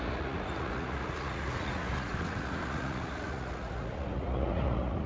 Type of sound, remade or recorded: remade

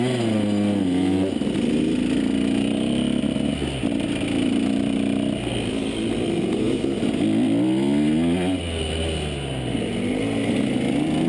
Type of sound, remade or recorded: recorded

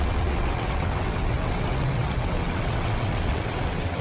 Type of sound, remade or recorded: remade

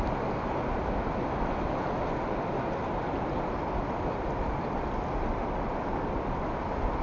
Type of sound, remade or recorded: recorded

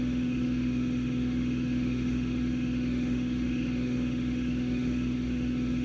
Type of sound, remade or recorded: remade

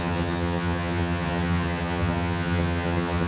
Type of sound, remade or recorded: remade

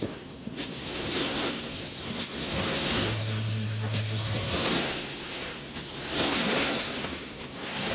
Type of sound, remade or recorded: remade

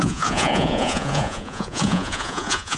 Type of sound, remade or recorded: remade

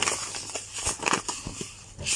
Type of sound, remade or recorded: recorded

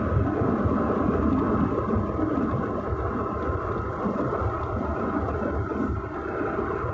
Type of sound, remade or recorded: recorded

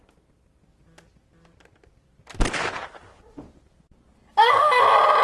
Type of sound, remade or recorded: recorded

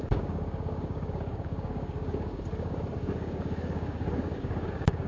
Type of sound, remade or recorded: remade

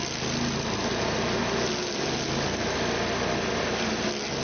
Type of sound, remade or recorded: recorded